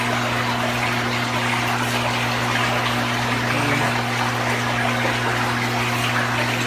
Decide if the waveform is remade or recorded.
recorded